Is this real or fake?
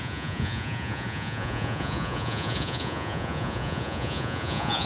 fake